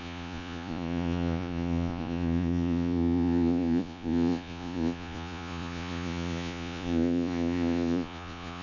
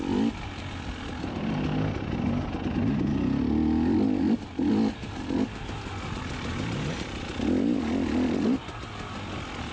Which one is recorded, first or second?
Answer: second